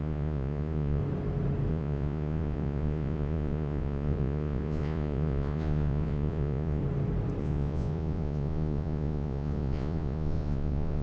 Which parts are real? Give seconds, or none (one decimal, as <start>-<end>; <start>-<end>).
1.0-1.7; 6.8-7.4